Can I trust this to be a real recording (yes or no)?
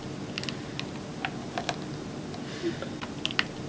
yes